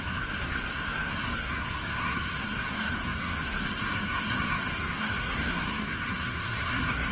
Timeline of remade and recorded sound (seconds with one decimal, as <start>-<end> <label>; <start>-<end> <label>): 0.0-7.1 remade